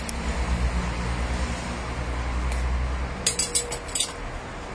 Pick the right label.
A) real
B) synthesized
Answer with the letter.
A